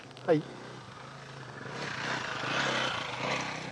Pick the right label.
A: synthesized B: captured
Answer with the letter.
B